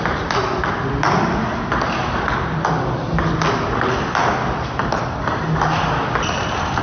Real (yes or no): yes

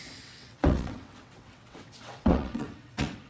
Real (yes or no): no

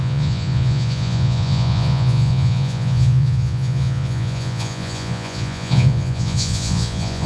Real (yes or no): no